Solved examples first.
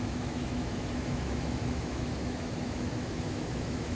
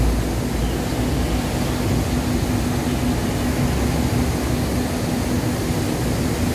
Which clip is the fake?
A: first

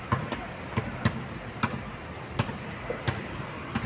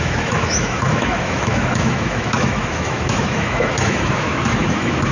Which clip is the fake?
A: second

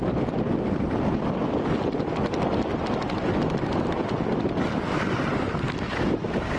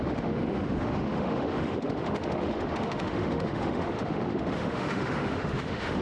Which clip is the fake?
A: second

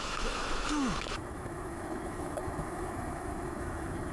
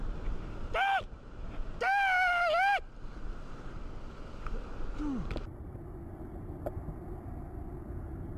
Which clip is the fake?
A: first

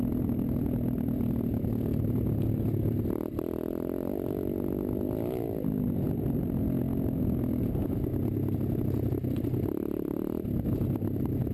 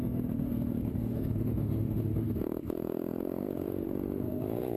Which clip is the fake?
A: second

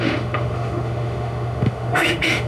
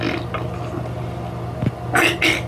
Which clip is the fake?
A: first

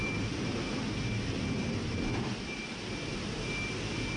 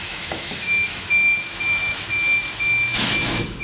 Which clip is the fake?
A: second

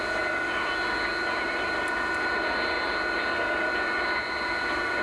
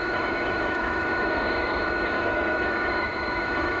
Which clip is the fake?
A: second